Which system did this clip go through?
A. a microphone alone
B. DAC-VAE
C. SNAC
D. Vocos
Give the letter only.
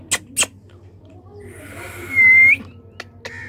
A